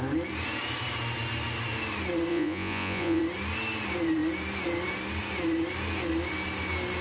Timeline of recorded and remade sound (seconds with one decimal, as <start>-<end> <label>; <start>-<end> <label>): 0.0-2.3 recorded; 2.3-3.2 remade; 3.2-7.0 recorded